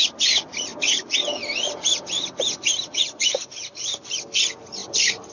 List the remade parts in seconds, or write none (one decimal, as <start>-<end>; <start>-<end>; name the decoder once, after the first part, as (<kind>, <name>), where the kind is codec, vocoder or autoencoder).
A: none